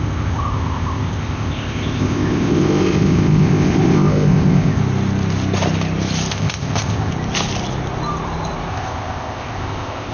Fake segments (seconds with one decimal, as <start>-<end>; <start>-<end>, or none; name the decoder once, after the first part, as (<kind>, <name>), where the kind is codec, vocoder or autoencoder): 0.0-4.8 (codec, ZipCodec); 6.3-7.1; 8.7-10.1